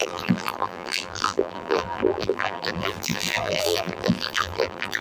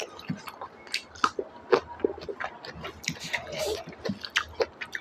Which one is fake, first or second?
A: first